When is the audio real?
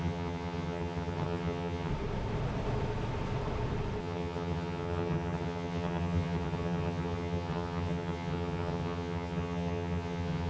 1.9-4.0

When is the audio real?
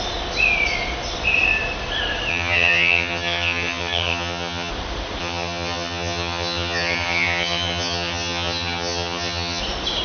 0.0-2.3; 4.7-5.2; 9.6-10.0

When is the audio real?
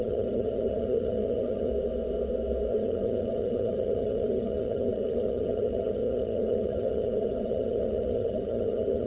1.7-2.7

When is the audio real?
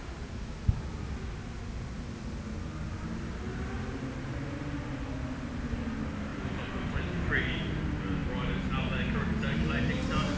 0.0-10.4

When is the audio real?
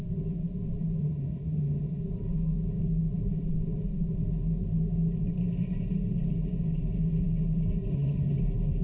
0.0-1.0; 2.0-7.9; 8.4-8.8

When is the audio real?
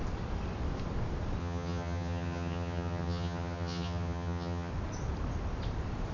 0.0-1.4; 4.7-6.1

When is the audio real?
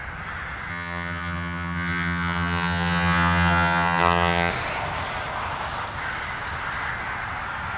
0.0-0.7; 4.5-7.8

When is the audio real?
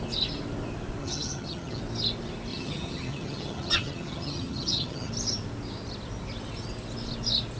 0.0-1.0; 1.8-2.5; 5.1-7.6